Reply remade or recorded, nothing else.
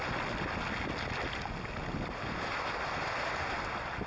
recorded